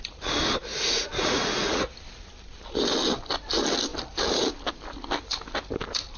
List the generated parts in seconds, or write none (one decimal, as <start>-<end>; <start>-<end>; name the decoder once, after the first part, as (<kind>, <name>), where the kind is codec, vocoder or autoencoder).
0.7-1.9 (vocoder, Vocos)